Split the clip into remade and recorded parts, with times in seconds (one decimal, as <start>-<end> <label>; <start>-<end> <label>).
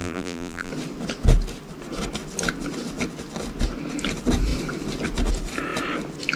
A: 0.0-0.7 remade; 0.7-6.4 recorded